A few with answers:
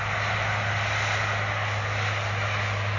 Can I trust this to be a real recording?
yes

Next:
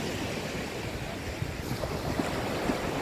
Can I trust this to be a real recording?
yes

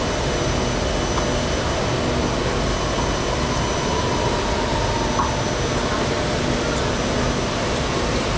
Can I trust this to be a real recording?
yes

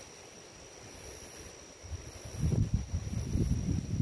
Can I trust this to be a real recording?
yes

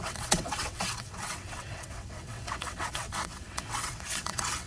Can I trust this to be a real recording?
no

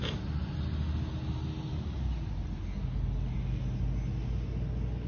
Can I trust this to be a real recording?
yes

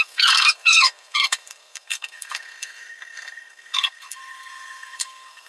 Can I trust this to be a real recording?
no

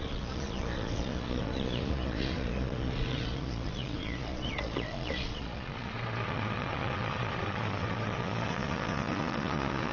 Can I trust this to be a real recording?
no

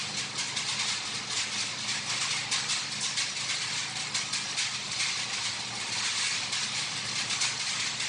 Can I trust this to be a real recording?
yes